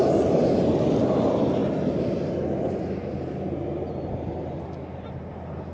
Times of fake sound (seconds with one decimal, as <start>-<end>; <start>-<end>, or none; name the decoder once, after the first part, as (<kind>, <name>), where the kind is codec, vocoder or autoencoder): none